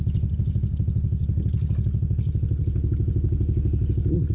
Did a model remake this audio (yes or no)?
no